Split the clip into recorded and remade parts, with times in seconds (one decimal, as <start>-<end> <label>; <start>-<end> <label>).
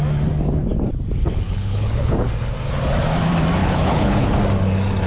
0.0-1.2 recorded; 1.2-2.3 remade; 2.3-3.6 recorded; 3.6-4.3 remade; 4.3-5.1 recorded